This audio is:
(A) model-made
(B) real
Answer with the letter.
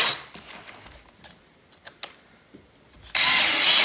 B